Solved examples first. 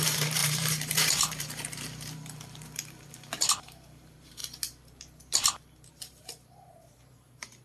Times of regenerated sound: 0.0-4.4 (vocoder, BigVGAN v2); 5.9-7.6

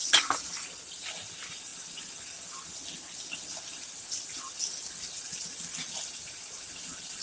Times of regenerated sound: none

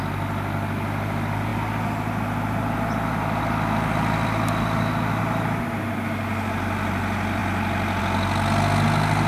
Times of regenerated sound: none

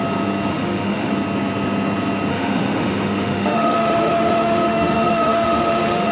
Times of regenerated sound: 0.5-1.1 (autoencoder, DAC-VAE); 2.3-6.1

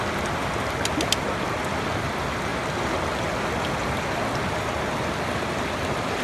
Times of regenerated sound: none

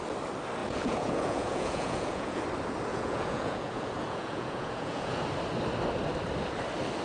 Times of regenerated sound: 0.6-2.4 (vocoder, Vocos); 2.9-5.2

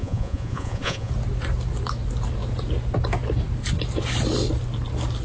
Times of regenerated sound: 0.0-1.1 (vocoder, Vocos)